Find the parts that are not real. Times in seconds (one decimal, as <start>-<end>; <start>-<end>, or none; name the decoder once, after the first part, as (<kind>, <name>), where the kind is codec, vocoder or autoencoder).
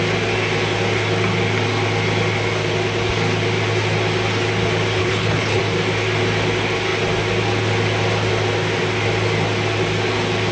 5.0-5.6 (codec, HILCodec)